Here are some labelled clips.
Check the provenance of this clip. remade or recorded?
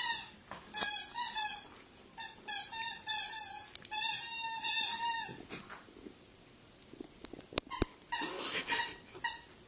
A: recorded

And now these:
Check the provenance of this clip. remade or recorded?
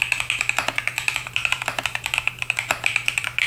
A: remade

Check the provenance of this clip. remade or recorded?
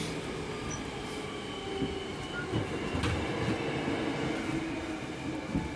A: recorded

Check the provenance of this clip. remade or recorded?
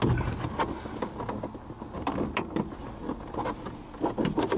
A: recorded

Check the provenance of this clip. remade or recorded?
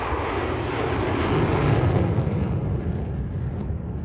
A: recorded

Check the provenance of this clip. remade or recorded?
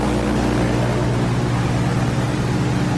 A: recorded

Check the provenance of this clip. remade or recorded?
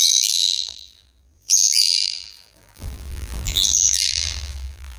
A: remade